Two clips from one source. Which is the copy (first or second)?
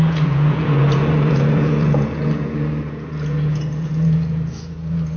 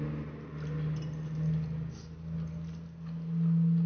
first